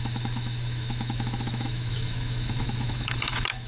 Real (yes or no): no